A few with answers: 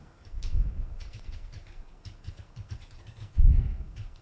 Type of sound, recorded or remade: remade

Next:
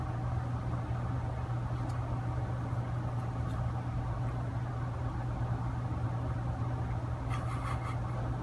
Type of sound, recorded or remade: recorded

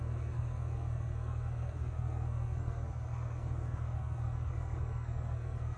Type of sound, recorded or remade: remade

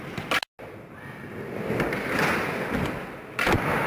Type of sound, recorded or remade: recorded